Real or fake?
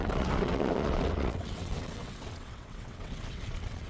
fake